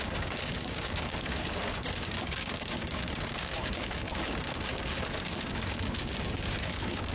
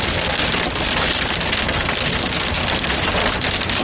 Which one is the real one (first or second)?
second